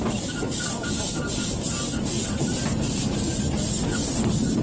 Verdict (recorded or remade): recorded